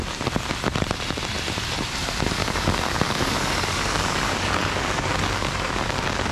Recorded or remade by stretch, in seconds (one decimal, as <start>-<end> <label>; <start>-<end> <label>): 0.0-2.4 recorded; 2.4-6.3 remade